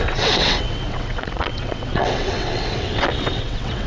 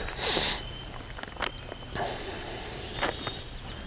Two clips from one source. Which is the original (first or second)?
second